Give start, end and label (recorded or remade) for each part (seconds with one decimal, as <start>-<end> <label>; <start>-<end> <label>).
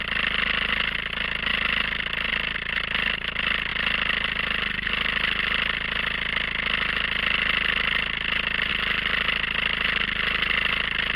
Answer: 0.0-11.2 recorded